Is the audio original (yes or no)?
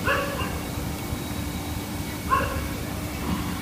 no